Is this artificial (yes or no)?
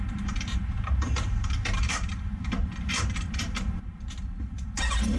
yes